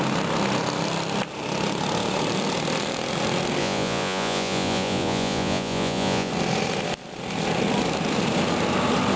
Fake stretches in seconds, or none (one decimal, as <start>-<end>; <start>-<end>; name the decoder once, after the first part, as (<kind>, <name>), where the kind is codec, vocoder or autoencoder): 3.6-6.3 (vocoder, Vocos)